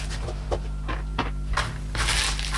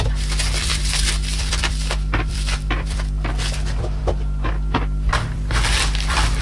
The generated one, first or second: second